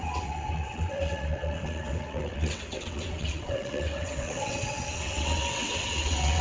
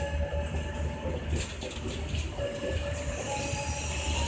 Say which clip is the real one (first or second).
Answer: second